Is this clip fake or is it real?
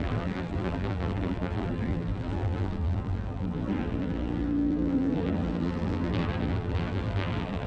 fake